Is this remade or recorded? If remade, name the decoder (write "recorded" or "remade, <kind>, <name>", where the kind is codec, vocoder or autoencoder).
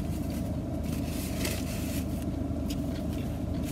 recorded